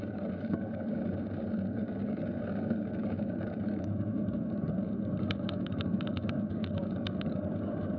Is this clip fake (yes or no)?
yes